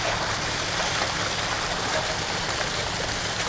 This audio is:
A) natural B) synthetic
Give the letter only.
A